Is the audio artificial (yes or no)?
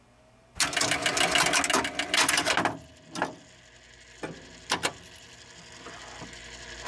no